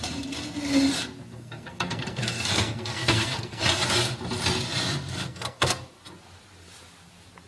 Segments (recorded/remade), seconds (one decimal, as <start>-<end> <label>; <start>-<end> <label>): 0.0-1.3 recorded; 1.3-3.6 remade; 3.6-5.1 recorded; 5.1-5.8 remade; 5.8-7.5 recorded